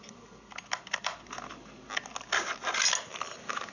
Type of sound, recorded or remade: recorded